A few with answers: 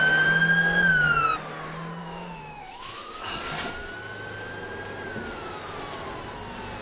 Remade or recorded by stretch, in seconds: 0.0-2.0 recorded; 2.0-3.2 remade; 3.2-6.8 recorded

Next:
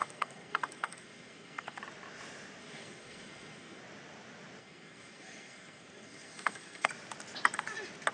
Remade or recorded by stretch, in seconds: 0.0-1.8 remade; 1.8-2.6 recorded; 2.6-3.8 remade; 3.8-4.6 recorded; 4.6-6.9 remade; 6.9-8.1 recorded

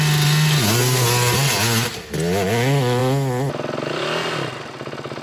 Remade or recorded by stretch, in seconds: 0.0-5.2 recorded

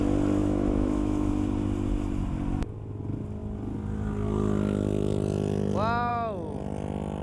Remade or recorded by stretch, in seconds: 0.0-0.4 recorded; 0.4-1.3 remade; 1.3-7.2 recorded

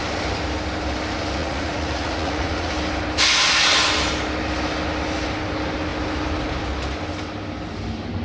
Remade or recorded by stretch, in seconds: 0.0-1.4 recorded; 1.4-2.7 remade; 2.7-8.2 recorded